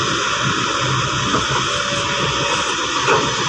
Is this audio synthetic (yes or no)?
no